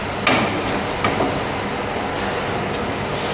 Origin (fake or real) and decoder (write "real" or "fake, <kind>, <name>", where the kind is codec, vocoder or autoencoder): real